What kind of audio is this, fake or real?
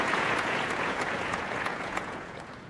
fake